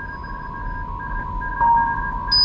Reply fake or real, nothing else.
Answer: real